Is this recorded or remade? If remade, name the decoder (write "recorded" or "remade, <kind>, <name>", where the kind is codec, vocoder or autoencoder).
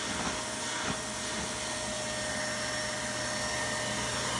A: recorded